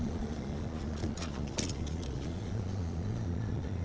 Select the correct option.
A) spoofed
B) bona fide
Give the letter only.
A